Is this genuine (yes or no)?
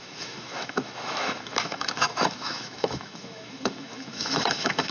no